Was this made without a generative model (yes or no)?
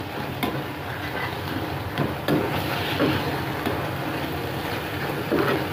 no